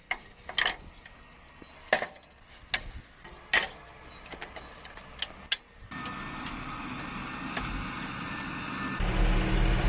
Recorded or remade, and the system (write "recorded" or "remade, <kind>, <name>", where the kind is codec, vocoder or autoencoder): recorded